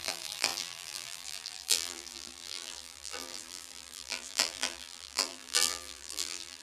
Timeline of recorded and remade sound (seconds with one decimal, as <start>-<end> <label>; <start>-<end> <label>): 0.0-6.6 remade